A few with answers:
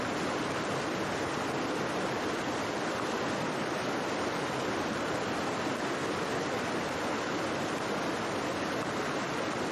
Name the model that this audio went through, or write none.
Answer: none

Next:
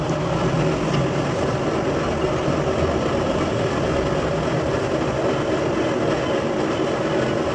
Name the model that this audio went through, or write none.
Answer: vocoder, BigVGAN v2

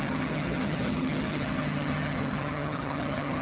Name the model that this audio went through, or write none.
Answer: vocoder, HiFi-GAN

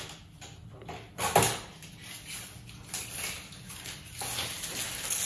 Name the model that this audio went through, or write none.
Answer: none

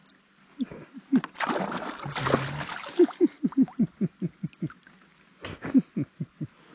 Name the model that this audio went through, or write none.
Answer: none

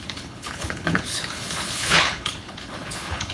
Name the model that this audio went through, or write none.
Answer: codec, HILCodec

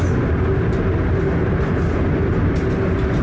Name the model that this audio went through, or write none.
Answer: none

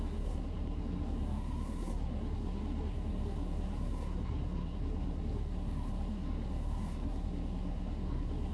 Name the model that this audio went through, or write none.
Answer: codec, SNAC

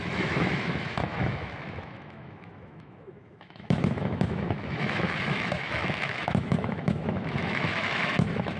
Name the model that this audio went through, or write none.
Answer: autoencoder, DAC-VAE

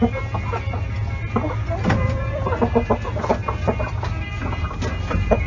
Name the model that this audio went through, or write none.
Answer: none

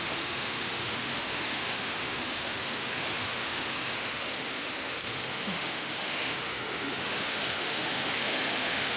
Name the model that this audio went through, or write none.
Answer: autoencoder, DAC-VAE